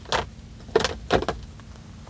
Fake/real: real